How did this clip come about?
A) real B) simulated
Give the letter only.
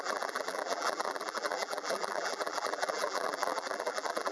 B